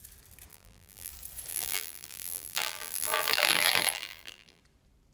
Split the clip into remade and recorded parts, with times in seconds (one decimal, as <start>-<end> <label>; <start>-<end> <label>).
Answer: 0.0-0.5 recorded; 0.5-1.1 remade; 1.1-1.5 recorded; 1.5-4.6 remade; 4.6-5.1 recorded

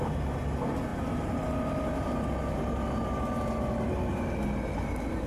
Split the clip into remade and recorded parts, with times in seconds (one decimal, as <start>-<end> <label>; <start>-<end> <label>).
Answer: 0.0-5.3 recorded

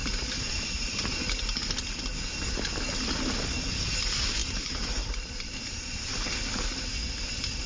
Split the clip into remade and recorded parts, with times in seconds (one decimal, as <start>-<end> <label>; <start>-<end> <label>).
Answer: 0.0-1.0 remade; 1.0-4.4 recorded; 4.4-5.5 remade; 5.5-7.7 recorded

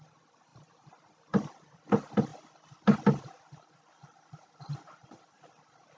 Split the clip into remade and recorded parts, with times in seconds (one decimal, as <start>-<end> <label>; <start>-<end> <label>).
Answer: 0.0-2.3 remade; 2.3-3.2 recorded; 3.2-6.0 remade